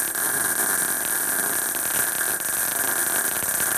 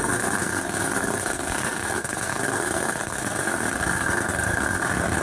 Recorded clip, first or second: first